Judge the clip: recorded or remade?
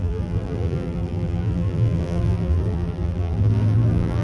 remade